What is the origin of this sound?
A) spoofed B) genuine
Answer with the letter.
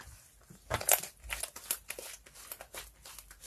B